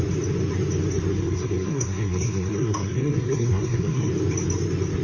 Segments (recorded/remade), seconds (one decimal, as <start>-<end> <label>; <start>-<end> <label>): 0.0-1.1 recorded; 1.1-4.1 remade; 4.1-5.0 recorded